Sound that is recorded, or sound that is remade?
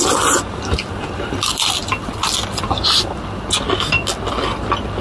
recorded